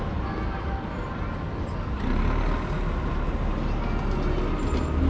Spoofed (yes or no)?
no